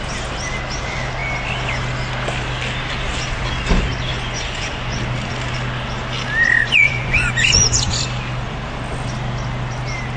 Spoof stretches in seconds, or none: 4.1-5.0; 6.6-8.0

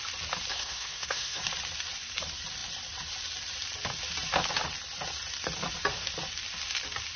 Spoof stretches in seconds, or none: 0.5-1.4

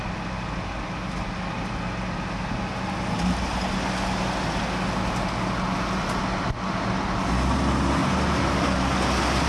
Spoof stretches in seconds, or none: 8.0-8.9

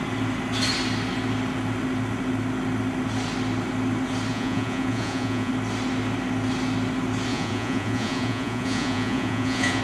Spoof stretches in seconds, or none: 4.3-5.5; 7.3-9.8